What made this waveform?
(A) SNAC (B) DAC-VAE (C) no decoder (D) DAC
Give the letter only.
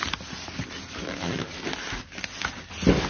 C